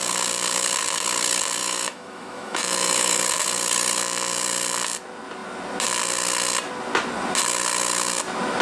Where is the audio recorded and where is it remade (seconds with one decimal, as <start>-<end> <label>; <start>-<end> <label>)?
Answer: 0.0-1.6 recorded; 1.6-3.2 remade; 3.2-8.6 recorded